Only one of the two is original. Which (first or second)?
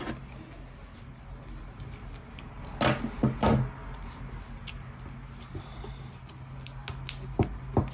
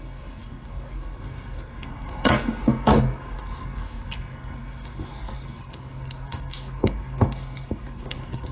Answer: first